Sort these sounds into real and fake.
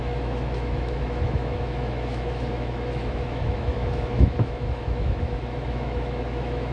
fake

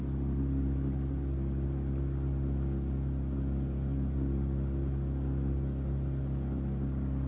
real